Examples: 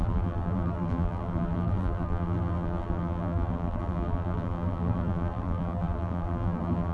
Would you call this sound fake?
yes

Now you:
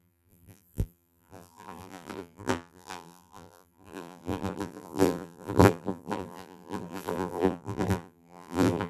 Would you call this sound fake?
yes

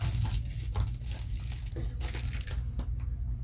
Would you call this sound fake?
no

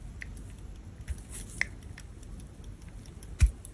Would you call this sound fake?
no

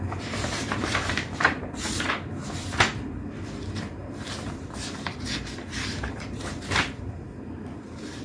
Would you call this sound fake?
yes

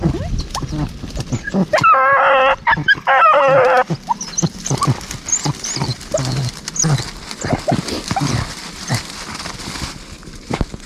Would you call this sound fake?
no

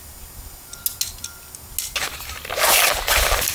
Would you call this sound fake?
no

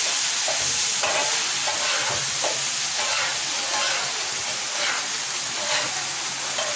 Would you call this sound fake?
no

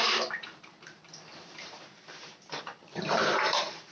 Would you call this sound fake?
yes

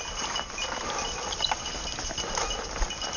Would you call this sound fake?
yes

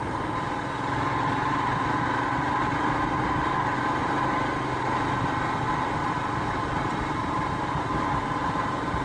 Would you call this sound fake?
no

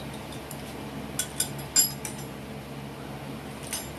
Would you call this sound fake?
no